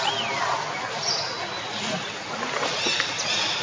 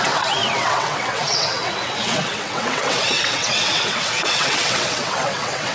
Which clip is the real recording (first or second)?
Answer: first